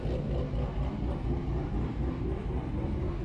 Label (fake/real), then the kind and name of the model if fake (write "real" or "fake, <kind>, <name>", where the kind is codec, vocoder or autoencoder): real